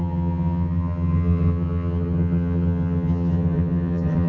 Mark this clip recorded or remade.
remade